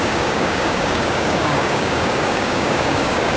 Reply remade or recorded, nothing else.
remade